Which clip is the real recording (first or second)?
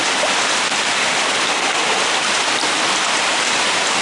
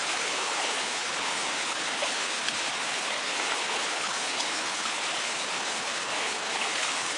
first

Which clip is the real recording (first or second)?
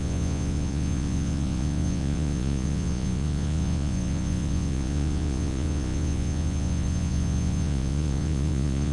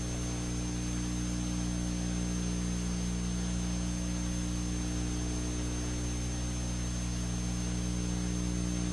second